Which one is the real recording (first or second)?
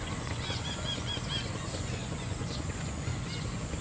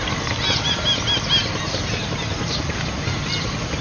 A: second